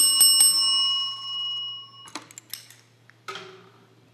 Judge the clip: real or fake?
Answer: real